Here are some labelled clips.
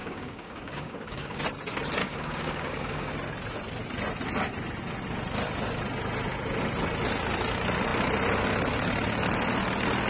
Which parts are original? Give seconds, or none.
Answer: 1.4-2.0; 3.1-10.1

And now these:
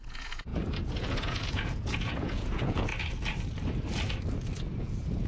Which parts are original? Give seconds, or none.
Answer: 2.9-4.8

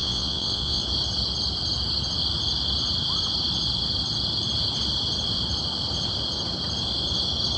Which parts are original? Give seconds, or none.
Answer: 0.8-7.6

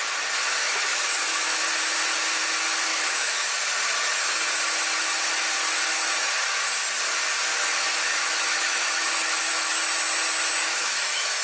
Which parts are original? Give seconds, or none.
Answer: 0.0-0.6; 1.7-2.9; 3.5-7.5; 9.8-10.6

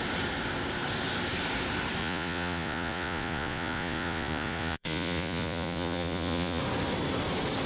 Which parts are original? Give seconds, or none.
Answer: 0.0-2.0; 6.6-7.7